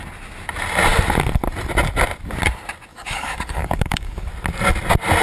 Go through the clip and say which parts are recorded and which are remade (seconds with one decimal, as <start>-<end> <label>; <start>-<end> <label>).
0.0-2.9 recorded; 2.9-4.3 remade; 4.3-5.2 recorded